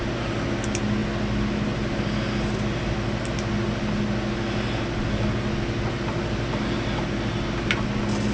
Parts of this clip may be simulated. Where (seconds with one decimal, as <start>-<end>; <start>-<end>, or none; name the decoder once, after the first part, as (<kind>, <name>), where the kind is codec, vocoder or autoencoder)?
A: none